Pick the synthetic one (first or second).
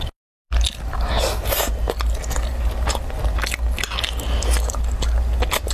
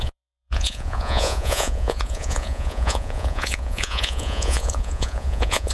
second